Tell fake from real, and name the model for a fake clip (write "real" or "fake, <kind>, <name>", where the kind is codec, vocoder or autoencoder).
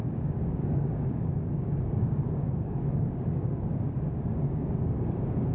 fake, codec, DAC